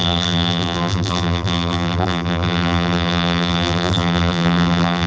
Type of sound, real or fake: fake